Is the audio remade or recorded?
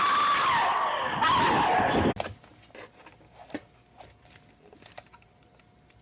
recorded